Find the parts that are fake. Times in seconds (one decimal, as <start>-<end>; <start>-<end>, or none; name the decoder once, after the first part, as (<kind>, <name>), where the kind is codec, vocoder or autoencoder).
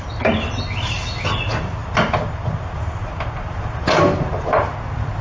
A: none